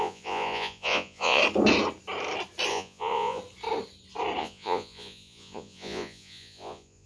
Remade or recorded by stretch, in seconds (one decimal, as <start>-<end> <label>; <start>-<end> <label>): 0.0-1.4 remade; 1.4-2.7 recorded; 2.7-3.4 remade; 3.4-4.4 recorded; 4.4-7.1 remade